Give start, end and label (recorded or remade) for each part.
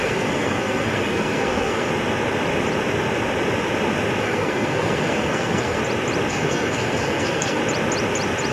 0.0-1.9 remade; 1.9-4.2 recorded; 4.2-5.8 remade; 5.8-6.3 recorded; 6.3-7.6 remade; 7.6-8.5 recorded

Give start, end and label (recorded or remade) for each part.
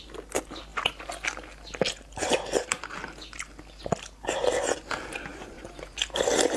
0.0-5.3 recorded; 5.3-6.0 remade; 6.0-6.6 recorded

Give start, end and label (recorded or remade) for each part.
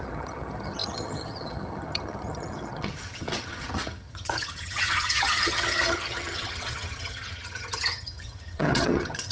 0.0-9.3 remade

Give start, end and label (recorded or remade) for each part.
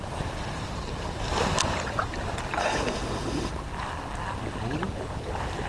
0.0-2.6 recorded; 2.6-3.5 remade; 3.5-5.7 recorded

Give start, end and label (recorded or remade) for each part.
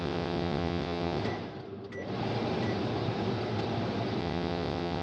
0.0-1.2 remade; 1.2-4.2 recorded; 4.2-5.0 remade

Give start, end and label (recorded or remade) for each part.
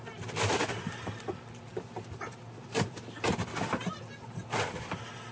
0.0-5.3 recorded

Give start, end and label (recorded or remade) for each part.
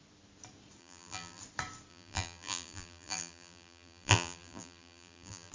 0.0-0.8 recorded; 0.8-1.4 remade; 1.4-1.9 recorded; 1.9-5.5 remade